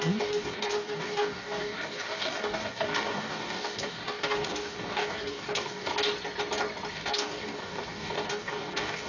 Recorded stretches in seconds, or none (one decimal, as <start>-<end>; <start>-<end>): 5.9-6.9